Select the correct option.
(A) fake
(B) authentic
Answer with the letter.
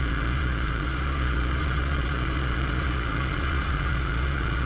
A